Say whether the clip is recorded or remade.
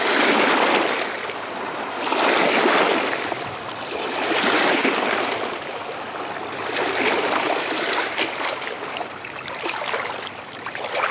recorded